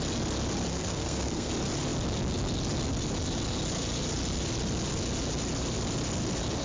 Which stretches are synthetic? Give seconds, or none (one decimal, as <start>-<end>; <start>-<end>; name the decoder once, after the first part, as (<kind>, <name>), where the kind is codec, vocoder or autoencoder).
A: 0.7-1.5 (codec, SNAC)

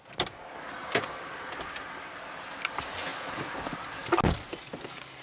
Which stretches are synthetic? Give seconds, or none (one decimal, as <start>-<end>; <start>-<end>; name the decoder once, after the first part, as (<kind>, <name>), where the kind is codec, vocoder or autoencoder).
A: none

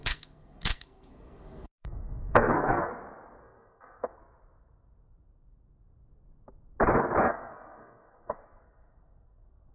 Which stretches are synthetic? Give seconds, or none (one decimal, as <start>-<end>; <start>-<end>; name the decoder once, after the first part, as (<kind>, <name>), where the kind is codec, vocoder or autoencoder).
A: 0.0-2.9 (codec, SNAC); 3.4-4.2; 7.3-9.7

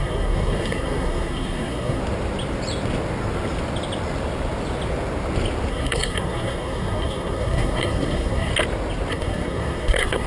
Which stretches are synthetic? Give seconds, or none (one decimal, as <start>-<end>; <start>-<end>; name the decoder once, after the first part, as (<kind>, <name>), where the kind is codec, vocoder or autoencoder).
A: 0.0-2.0 (codec, SNAC); 5.7-8.5; 9.1-10.3